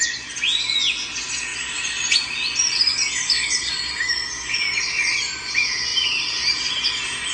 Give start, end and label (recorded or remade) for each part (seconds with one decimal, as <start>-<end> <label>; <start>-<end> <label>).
0.0-1.5 recorded; 1.5-3.7 remade; 3.7-7.3 recorded